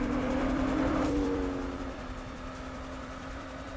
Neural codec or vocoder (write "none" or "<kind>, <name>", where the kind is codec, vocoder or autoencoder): vocoder, BigVGAN v2